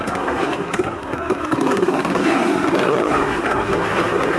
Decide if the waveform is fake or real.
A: fake